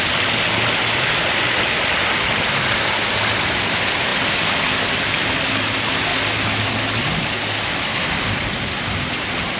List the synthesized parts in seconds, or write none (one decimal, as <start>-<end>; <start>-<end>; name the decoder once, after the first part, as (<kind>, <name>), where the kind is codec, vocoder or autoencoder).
none

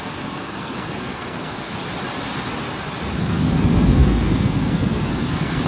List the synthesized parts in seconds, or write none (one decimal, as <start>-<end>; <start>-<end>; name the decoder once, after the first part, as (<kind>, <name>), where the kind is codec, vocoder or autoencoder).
0.0-1.8 (codec, SNAC); 3.2-5.7

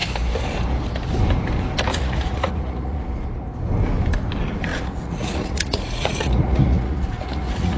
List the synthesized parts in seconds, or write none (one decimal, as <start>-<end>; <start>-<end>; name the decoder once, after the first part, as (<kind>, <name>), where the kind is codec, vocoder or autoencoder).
1.9-3.0 (vocoder, Vocos); 4.7-7.8

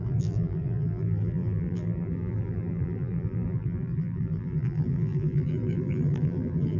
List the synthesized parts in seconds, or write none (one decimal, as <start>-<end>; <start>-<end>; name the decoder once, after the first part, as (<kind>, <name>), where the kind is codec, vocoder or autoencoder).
0.0-6.8 (vocoder, BigVGAN v2)

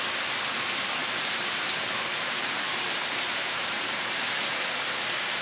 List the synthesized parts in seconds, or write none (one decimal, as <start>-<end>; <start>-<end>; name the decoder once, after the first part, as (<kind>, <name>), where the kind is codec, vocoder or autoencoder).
1.0-4.2 (vocoder, BigVGAN v2)